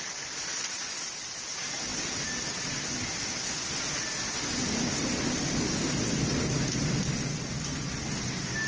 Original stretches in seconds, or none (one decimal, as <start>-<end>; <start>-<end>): 0.0-8.7